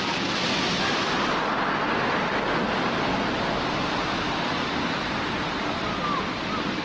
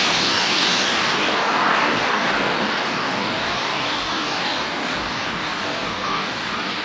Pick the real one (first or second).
first